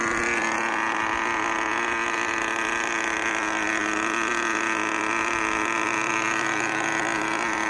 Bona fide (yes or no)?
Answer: yes